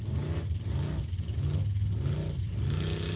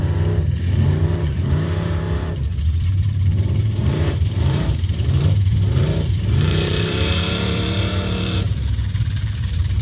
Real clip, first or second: first